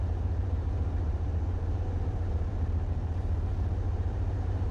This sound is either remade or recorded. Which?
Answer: remade